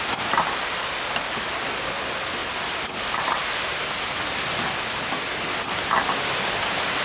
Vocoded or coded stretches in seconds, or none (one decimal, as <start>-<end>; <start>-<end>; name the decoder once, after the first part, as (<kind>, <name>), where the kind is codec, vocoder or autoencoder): none